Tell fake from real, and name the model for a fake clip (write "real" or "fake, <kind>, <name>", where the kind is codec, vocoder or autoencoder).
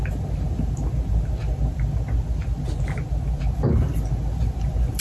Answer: real